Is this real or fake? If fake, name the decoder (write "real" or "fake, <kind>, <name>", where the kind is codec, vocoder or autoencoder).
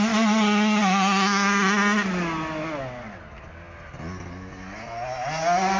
real